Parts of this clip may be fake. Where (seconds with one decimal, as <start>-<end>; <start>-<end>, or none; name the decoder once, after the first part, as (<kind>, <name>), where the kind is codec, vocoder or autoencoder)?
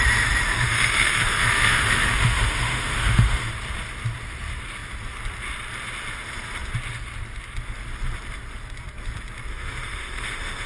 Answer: 0.5-3.5 (autoencoder, DAC-VAE); 9.5-10.7